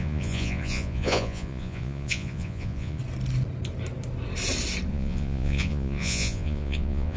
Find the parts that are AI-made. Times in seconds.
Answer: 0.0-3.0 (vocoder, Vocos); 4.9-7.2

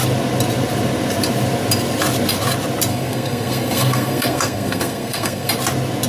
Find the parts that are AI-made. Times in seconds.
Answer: 2.9-5.5 (codec, SNAC)

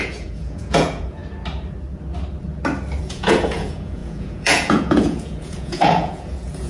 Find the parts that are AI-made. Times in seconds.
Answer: 0.0-1.2 (vocoder, Vocos); 3.0-6.7

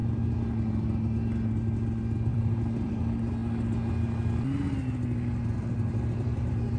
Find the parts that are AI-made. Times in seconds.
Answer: 2.3-3.0 (vocoder, BigVGAN v2); 5.5-6.8

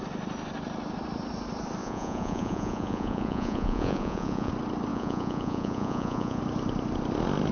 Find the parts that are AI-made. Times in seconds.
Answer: 1.8-4.5 (vocoder, Vocos); 4.9-6.4

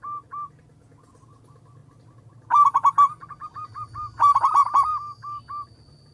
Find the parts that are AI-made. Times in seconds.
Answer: 4.9-5.4 (autoencoder, DAC-VAE)

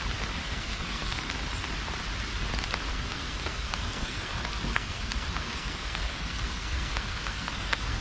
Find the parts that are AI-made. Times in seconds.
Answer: 0.4-1.3 (codec, SNAC); 2.9-8.0

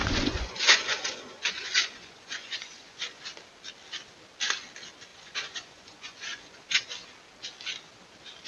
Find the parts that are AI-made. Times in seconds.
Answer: 0.0-3.2 (vocoder, Vocos); 5.1-6.8